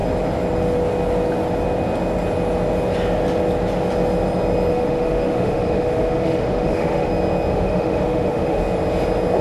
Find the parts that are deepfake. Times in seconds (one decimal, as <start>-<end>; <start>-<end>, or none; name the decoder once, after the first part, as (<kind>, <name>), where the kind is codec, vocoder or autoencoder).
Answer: 4.7-7.1 (autoencoder, DAC-VAE); 7.5-8.6